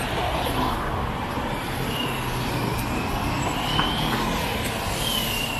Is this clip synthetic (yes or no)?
no